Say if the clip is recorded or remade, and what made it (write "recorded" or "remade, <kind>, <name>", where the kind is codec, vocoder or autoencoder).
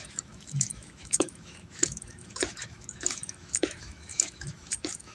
remade, autoencoder, DAC-VAE